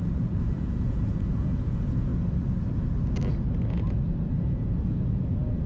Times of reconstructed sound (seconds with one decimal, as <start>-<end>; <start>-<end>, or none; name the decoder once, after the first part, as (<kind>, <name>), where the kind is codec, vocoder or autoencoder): 0.0-2.1 (vocoder, Vocos); 4.2-5.7